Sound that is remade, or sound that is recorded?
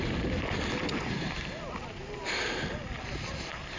recorded